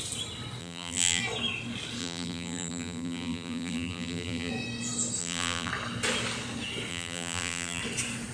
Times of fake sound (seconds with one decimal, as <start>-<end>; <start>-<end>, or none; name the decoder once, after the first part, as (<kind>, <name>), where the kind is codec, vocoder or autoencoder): 0.6-1.2 (vocoder, BigVGAN v2); 2.0-4.5; 5.2-5.7; 6.9-7.8